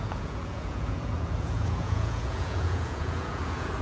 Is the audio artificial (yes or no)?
yes